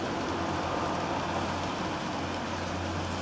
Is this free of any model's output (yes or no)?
yes